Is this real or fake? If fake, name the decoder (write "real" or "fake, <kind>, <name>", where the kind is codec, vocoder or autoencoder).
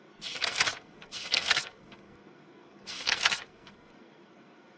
fake, codec, SNAC